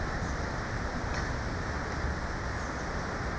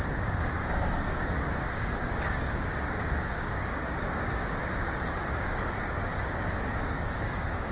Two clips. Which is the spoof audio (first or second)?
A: second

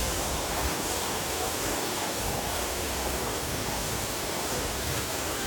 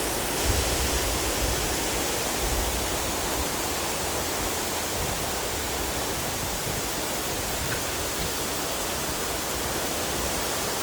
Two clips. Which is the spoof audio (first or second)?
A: first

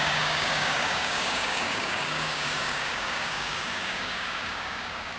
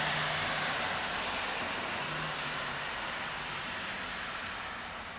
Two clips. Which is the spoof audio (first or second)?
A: first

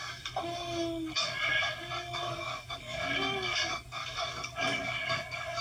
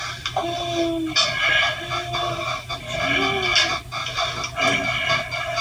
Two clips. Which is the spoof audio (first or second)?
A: first